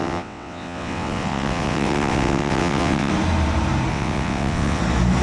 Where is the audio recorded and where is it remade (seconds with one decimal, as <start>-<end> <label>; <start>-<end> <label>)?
0.0-3.1 remade; 3.1-3.9 recorded; 3.9-4.8 remade; 4.8-5.2 recorded